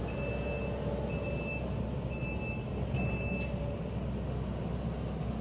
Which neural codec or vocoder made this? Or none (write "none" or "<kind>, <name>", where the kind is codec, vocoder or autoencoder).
none